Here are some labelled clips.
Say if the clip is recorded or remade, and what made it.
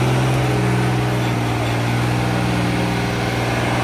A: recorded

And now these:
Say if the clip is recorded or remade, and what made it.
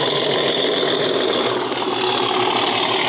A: recorded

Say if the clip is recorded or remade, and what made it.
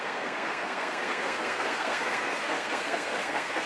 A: remade, codec, SNAC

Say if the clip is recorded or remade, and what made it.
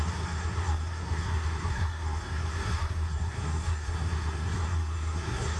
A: remade, codec, SNAC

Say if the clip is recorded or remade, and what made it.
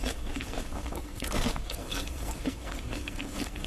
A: remade, codec, SNAC